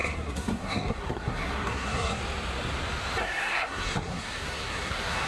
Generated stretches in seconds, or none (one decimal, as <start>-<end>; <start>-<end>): 0.0-2.2; 3.2-5.3